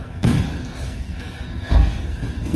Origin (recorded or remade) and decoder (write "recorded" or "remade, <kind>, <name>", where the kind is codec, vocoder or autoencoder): remade, codec, SNAC